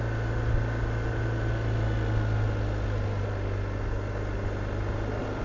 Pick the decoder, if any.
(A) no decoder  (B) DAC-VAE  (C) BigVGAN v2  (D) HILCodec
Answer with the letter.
A